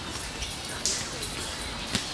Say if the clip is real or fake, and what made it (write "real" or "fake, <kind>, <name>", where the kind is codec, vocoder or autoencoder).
real